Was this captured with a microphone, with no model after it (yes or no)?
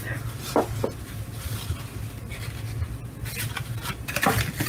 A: yes